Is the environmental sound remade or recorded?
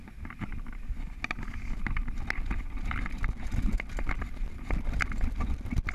recorded